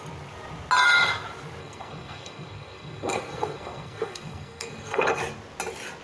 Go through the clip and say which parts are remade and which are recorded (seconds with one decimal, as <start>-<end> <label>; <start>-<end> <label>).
0.0-1.6 recorded; 1.6-5.2 remade; 5.2-6.0 recorded